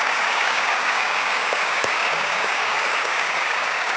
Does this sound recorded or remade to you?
remade